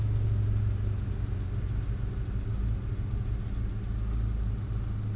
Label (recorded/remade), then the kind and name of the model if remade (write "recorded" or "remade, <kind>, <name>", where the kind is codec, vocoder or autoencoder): recorded